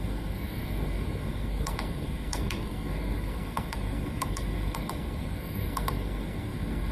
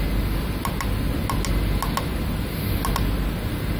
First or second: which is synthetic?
first